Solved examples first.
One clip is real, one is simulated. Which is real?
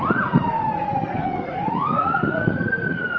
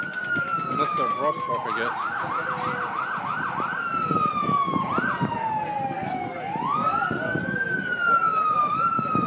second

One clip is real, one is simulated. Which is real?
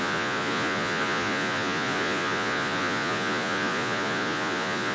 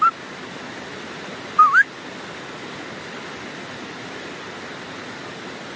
second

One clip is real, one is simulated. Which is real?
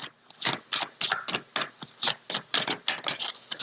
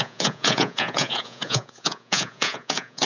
first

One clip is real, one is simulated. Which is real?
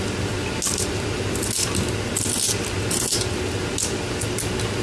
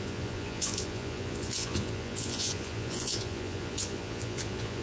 first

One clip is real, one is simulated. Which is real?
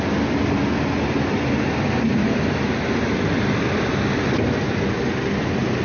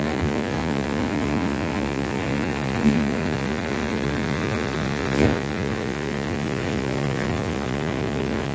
first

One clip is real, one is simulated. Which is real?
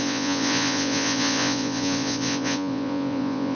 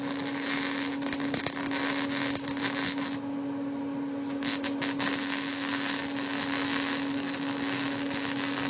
second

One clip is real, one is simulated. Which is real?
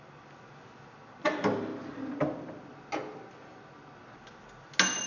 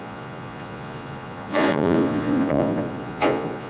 first